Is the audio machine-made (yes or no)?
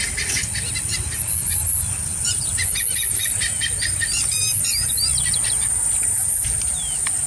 no